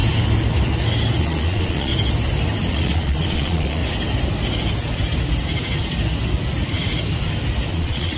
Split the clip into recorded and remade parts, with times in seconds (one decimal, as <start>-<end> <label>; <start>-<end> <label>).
0.0-1.2 recorded; 1.2-1.9 remade; 1.9-2.7 recorded; 2.7-3.8 remade; 3.8-7.7 recorded; 7.7-8.2 remade

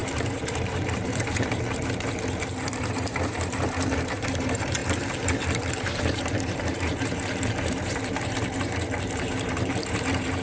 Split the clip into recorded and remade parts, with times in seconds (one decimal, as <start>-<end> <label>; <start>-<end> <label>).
0.0-4.8 remade; 4.8-5.7 recorded; 5.7-10.4 remade

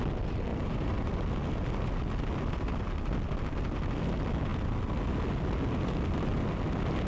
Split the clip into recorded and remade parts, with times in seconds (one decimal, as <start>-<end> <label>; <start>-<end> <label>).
0.0-0.5 recorded; 0.5-1.1 remade; 1.1-7.1 recorded

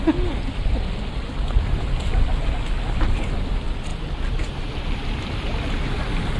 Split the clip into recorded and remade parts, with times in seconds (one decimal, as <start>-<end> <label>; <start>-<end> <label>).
0.0-6.4 recorded

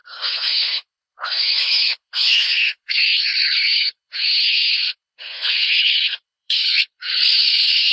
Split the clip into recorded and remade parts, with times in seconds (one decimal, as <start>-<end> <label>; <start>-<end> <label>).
0.0-7.9 remade

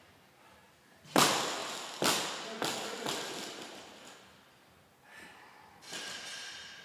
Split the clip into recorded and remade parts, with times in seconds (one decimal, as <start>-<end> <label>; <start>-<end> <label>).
0.0-6.8 recorded

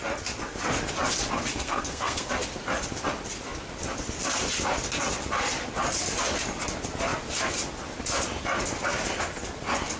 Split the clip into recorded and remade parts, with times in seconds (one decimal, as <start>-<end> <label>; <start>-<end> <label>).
0.0-1.5 recorded; 1.5-2.3 remade; 2.3-10.0 recorded

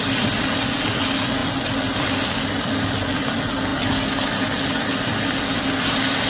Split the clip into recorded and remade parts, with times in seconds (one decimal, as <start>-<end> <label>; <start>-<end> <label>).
0.0-6.3 recorded